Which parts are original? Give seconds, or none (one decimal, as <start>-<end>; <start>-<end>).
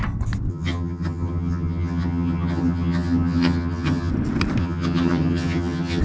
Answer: 0.0-0.5; 4.1-4.6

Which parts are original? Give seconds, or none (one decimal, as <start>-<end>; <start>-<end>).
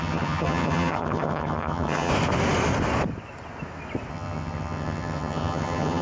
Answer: 2.1-4.1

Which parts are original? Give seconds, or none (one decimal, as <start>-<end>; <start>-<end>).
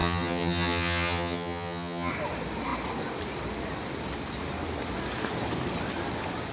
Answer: 2.1-6.5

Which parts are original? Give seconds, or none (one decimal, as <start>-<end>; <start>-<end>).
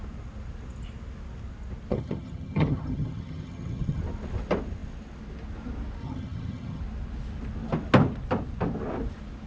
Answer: 0.0-1.9; 4.0-6.0; 6.8-9.5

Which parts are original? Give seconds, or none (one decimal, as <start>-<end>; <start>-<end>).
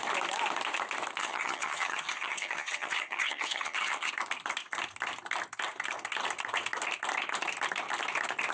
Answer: 0.0-1.2; 4.1-8.5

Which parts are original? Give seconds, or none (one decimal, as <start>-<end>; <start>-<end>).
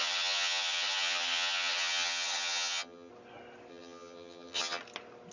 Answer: 3.1-3.7; 4.8-5.3